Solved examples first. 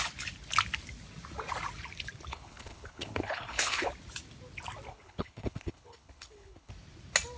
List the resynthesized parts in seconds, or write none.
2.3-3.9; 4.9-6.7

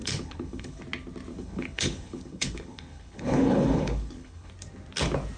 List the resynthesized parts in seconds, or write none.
0.0-0.8; 1.3-4.5

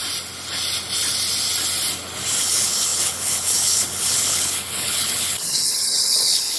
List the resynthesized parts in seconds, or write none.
2.4-6.6

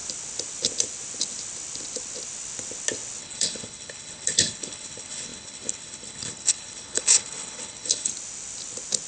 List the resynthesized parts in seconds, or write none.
3.2-8.1

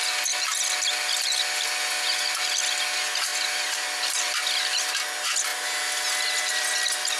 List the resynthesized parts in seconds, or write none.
none

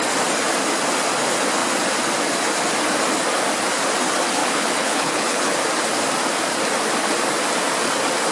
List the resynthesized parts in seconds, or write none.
4.4-5.6

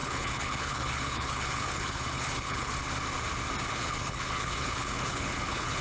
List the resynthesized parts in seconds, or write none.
0.0-2.7; 3.7-5.8